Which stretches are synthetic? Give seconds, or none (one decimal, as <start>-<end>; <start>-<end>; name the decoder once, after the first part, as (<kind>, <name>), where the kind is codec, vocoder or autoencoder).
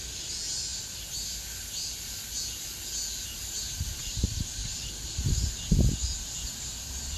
4.0-5.2 (vocoder, BigVGAN v2)